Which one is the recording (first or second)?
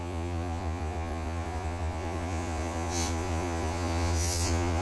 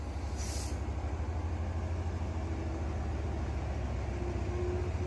second